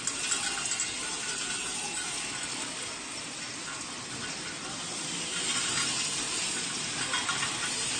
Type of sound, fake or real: real